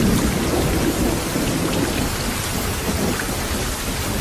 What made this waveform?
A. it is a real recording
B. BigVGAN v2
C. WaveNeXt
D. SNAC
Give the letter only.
A